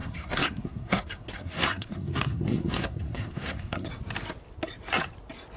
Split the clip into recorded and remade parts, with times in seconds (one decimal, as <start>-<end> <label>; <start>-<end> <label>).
0.0-3.9 remade; 3.9-5.6 recorded